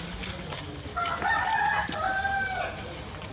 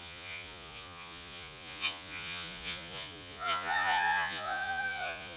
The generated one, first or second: second